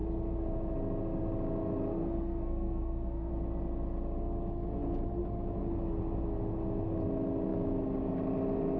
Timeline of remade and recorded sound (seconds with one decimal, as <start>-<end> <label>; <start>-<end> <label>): 0.0-1.9 recorded; 1.9-3.3 remade; 3.3-8.8 recorded